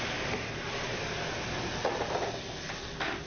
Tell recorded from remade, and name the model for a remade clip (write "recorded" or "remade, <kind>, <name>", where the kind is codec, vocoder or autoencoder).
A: recorded